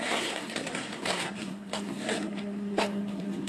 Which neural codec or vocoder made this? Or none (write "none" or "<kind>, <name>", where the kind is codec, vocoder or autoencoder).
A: codec, SNAC